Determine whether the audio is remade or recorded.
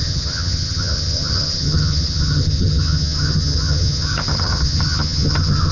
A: remade